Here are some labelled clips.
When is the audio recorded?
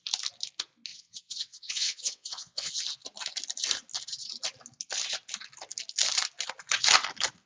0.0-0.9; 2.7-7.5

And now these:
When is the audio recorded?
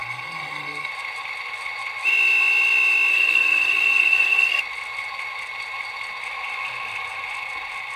0.9-3.1; 4.6-8.0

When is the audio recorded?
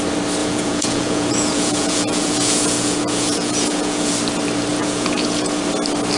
0.0-0.4; 4.1-4.7; 5.6-6.2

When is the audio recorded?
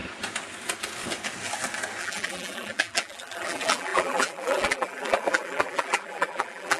0.0-2.0